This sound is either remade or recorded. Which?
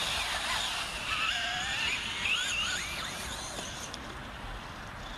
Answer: recorded